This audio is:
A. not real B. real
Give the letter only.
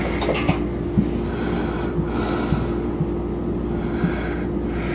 B